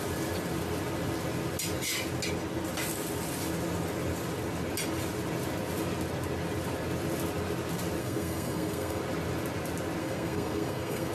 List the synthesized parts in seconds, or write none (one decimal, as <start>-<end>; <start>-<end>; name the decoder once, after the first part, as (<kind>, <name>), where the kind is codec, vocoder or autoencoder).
8.0-9.0 (codec, SNAC); 10.0-11.1